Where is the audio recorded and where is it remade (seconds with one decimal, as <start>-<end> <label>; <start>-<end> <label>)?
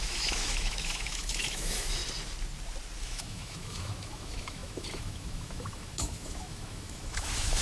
0.0-2.0 remade; 2.0-3.0 recorded; 3.0-7.6 remade